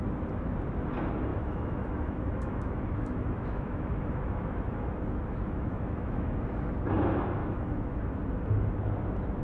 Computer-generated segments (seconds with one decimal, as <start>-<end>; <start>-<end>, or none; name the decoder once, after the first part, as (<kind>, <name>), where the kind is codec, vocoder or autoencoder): 1.3-6.3 (autoencoder, DAC-VAE); 7.4-8.0